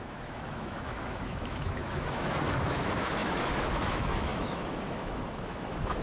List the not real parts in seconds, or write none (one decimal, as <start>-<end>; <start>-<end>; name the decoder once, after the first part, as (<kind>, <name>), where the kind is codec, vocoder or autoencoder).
0.0-6.0 (autoencoder, DAC-VAE)